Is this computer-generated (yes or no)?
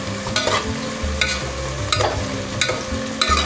no